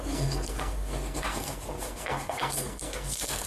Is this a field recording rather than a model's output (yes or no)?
no